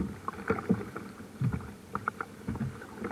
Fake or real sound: fake